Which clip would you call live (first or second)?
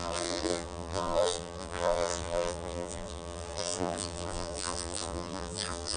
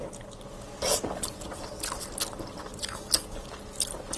second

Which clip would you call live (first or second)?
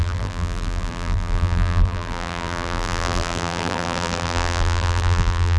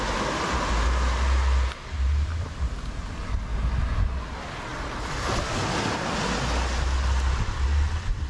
second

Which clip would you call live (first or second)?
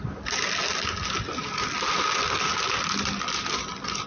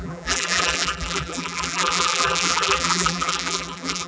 first